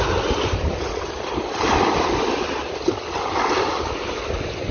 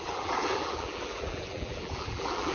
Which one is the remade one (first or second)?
second